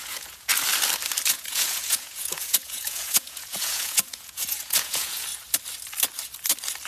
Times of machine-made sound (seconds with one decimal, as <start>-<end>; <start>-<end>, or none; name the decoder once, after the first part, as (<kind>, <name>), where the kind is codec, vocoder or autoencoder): 0.0-0.5 (vocoder, Vocos); 1.3-5.3